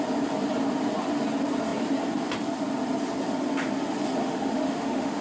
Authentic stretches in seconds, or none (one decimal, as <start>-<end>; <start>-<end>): 0.0-4.2